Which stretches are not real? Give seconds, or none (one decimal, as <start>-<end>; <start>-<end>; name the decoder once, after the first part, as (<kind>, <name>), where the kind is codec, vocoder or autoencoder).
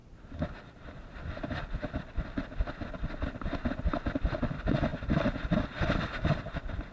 4.9-5.5 (vocoder, BigVGAN v2)